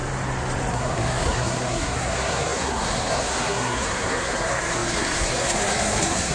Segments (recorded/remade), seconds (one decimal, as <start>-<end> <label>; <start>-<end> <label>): 0.0-0.7 recorded; 0.7-6.3 remade